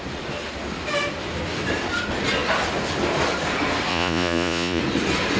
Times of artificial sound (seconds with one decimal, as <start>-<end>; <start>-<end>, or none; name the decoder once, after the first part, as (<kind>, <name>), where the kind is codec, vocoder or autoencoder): 3.9-4.8 (vocoder, Vocos)